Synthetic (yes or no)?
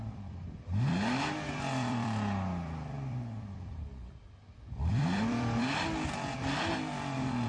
yes